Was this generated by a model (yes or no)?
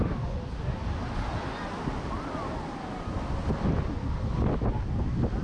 no